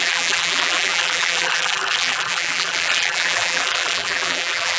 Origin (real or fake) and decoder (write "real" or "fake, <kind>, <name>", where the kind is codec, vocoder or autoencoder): fake, vocoder, BigVGAN v2